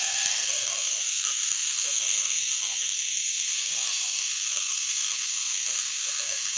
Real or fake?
fake